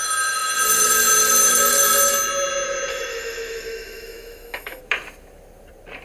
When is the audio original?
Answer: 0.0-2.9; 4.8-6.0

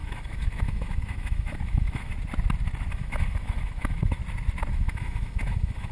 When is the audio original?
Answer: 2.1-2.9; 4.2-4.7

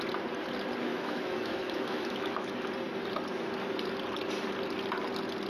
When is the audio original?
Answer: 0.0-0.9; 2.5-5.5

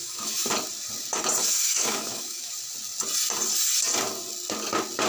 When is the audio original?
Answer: 0.5-1.4; 2.5-5.1